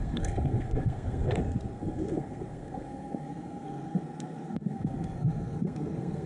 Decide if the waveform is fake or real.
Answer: fake